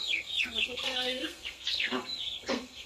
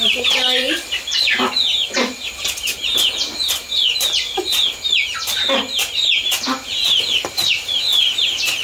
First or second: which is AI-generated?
first